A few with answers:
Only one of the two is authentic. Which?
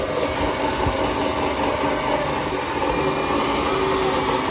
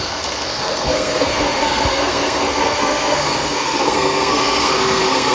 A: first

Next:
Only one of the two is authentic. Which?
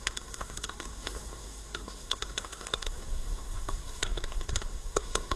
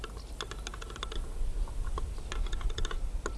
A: second